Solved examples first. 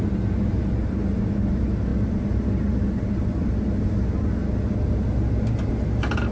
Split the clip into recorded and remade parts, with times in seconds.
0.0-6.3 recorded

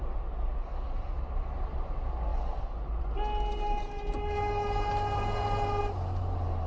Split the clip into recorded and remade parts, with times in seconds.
0.0-6.7 recorded

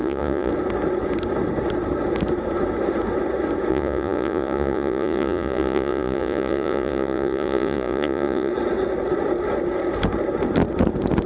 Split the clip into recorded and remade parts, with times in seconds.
0.0-0.5 remade; 0.5-3.7 recorded; 3.7-8.5 remade; 8.5-11.3 recorded

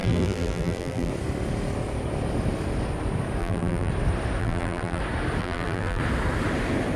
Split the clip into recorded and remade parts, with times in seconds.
0.0-1.1 remade; 1.1-3.4 recorded; 3.4-3.9 remade; 3.9-4.4 recorded; 4.4-5.0 remade; 5.0-5.4 recorded; 5.4-6.0 remade; 6.0-7.0 recorded

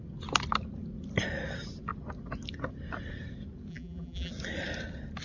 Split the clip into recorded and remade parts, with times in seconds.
0.0-3.7 recorded; 3.7-4.3 remade; 4.3-5.2 recorded